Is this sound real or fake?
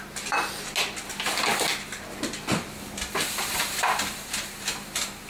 real